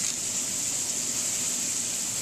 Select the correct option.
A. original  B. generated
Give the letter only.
A